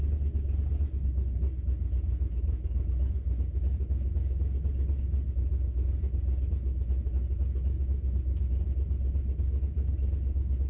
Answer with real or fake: real